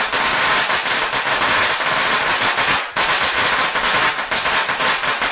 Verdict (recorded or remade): recorded